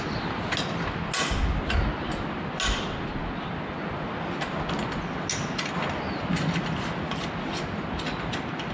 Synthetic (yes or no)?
no